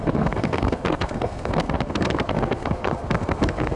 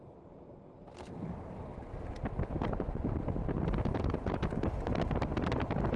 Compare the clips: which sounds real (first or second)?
second